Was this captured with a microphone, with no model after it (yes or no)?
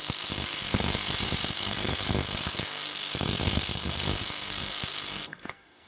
no